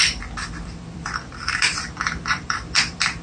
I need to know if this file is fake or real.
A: fake